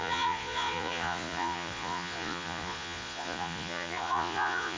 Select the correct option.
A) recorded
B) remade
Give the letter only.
B